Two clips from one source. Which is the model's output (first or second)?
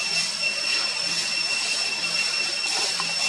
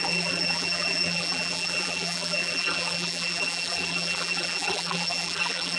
second